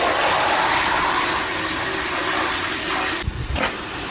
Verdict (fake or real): real